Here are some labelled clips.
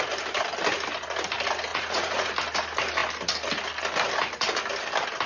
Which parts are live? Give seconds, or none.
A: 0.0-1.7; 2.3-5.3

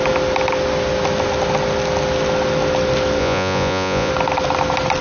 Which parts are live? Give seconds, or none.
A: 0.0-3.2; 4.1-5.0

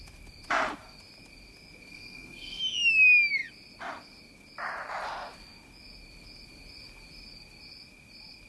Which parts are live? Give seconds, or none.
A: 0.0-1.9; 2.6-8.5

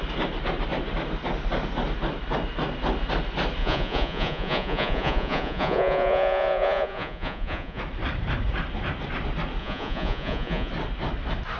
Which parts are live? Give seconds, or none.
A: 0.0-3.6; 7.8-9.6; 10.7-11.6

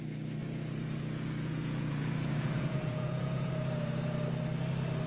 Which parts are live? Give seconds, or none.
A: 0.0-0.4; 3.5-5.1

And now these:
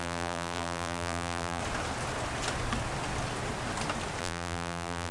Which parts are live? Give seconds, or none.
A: 1.6-4.2

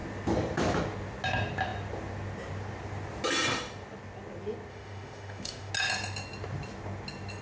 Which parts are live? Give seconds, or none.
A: 0.0-4.7; 5.7-7.4